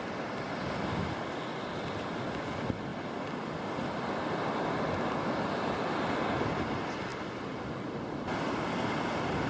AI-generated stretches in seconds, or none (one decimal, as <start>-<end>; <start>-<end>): none